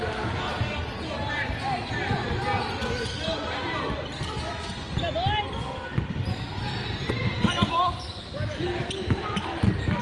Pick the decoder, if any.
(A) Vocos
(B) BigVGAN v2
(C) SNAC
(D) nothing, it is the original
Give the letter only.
D